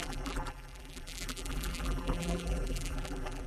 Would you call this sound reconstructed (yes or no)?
yes